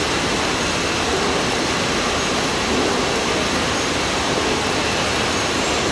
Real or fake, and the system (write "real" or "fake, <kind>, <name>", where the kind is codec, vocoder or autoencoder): real